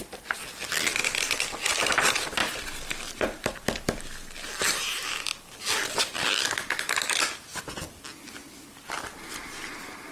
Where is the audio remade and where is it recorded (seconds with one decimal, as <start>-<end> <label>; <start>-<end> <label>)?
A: 0.0-10.1 recorded